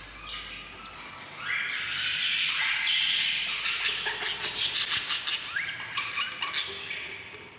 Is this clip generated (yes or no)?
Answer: no